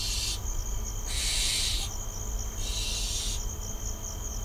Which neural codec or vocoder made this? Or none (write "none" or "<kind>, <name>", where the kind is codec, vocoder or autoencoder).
none